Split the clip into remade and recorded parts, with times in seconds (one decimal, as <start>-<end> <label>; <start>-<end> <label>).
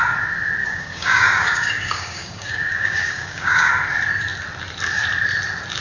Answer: 0.0-0.6 recorded; 0.6-3.7 remade; 3.7-5.8 recorded